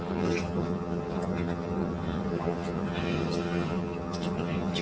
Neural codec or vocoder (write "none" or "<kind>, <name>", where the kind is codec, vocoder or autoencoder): vocoder, HiFi-GAN